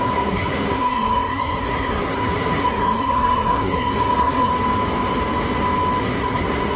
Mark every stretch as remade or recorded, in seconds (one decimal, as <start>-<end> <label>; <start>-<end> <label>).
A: 0.0-4.5 remade; 4.5-6.0 recorded; 6.0-6.8 remade